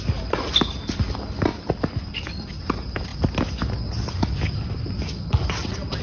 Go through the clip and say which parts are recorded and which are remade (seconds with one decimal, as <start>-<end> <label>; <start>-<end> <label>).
0.0-6.0 recorded